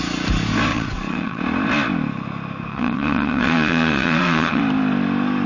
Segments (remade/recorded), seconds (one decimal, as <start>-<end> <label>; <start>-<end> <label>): 0.0-0.7 recorded; 0.7-1.4 remade; 1.4-2.7 recorded; 2.7-4.6 remade; 4.6-5.5 recorded